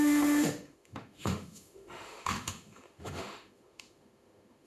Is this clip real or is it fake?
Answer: fake